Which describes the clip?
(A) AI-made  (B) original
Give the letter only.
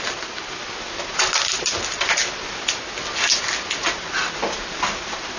B